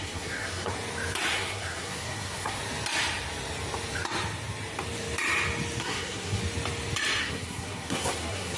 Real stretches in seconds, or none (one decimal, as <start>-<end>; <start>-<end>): 0.7-1.3; 2.6-5.8; 6.4-7.2